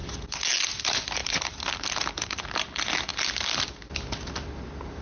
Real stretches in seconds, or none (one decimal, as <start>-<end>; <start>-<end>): 0.0-5.0